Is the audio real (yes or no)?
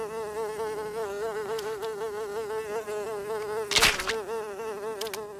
yes